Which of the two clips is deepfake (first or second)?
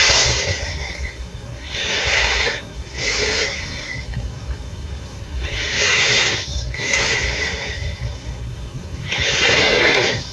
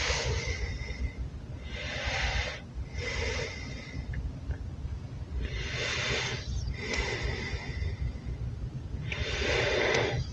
first